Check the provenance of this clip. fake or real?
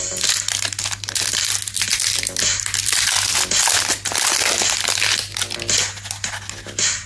real